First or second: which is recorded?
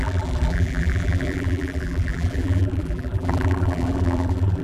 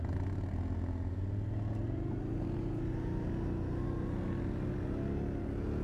second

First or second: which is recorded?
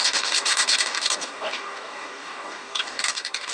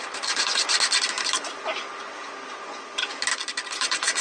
second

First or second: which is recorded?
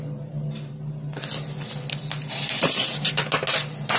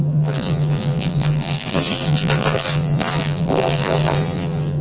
first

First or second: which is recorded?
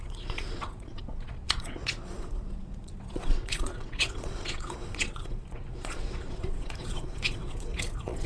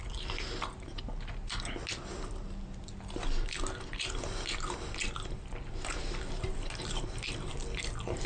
second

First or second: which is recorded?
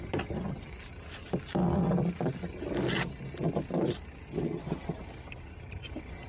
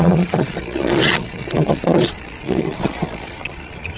first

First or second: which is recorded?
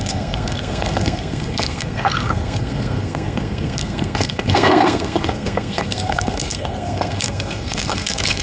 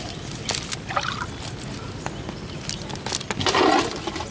second